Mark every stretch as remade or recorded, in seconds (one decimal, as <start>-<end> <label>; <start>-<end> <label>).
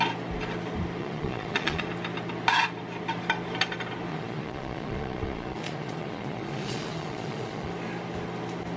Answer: 0.0-1.0 recorded; 1.0-1.8 remade; 1.8-4.1 recorded; 4.1-7.7 remade; 7.7-8.8 recorded